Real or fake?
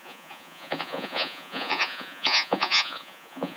fake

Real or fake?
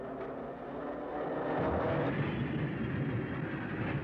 real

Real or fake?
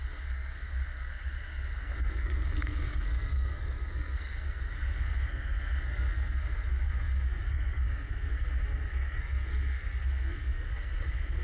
fake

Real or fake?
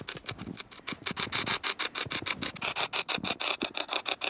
real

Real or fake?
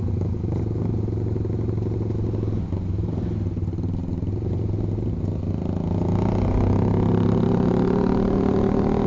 real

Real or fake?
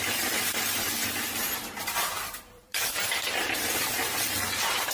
fake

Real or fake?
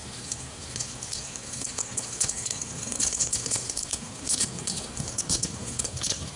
fake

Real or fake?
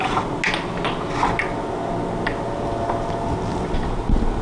real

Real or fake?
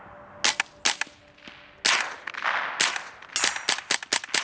real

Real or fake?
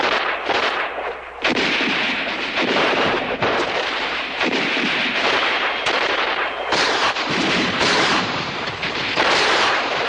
fake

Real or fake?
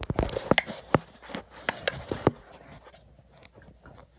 real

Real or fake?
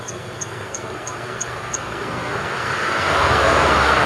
fake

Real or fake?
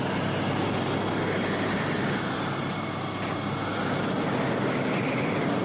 real